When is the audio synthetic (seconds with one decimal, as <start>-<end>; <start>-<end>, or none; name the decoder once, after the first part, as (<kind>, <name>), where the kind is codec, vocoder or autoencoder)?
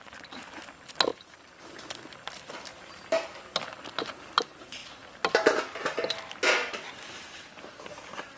none